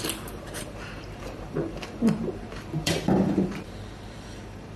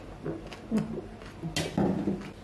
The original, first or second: second